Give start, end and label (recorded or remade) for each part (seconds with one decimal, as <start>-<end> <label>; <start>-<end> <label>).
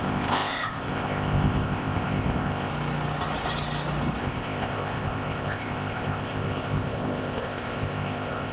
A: 0.0-2.7 remade; 2.7-4.2 recorded; 4.2-8.5 remade